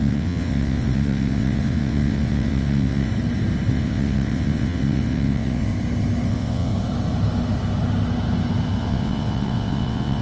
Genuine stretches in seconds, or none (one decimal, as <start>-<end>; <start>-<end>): 3.1-3.7; 5.7-6.3; 6.7-8.8